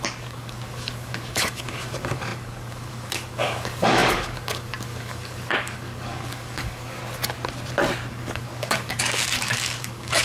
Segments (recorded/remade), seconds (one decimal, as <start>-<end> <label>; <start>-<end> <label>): 0.0-7.0 remade; 7.0-8.1 recorded; 8.1-10.2 remade